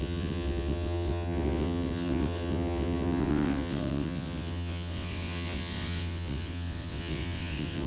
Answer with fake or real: fake